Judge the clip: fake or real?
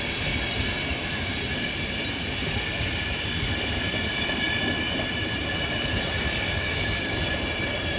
real